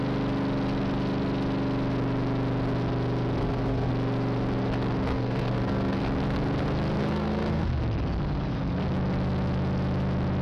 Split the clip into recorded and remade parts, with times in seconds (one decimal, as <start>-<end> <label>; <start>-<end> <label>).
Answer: 0.0-3.4 recorded; 3.4-3.9 remade; 3.9-5.1 recorded; 5.1-6.0 remade; 6.0-7.0 recorded; 7.0-7.8 remade; 7.8-10.4 recorded